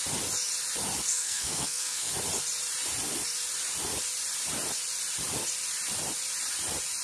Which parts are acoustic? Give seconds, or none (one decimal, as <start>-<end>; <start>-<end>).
0.0-1.1; 2.1-7.0